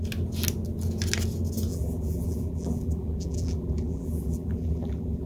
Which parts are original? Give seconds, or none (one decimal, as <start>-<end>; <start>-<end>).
0.0-1.7